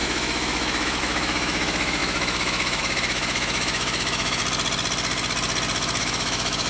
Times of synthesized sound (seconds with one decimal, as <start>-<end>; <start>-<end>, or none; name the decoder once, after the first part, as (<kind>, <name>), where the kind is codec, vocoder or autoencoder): 0.0-4.4 (autoencoder, DAC-VAE); 6.0-6.7